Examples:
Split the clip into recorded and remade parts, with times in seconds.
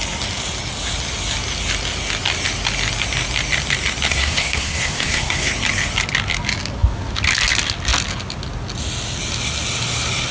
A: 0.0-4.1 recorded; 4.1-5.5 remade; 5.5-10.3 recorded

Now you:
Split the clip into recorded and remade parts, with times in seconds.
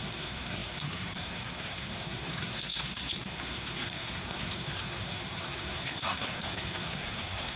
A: 0.0-7.6 remade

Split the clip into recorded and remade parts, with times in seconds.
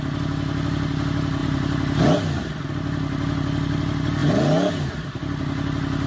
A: 0.0-1.4 recorded; 1.4-2.0 remade; 2.0-4.2 recorded; 4.2-4.9 remade; 4.9-6.1 recorded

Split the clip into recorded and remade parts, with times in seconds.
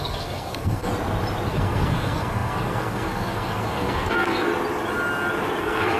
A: 0.0-0.9 remade; 0.9-1.5 recorded; 1.5-4.5 remade; 4.5-5.6 recorded; 5.6-6.0 remade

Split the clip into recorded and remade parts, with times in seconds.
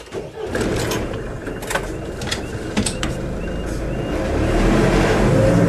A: 0.0-5.7 recorded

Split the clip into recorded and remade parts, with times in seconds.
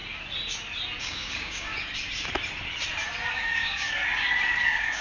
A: 0.0-1.0 recorded; 1.0-1.7 remade; 1.7-3.3 recorded; 3.3-4.0 remade; 4.0-4.6 recorded; 4.6-5.0 remade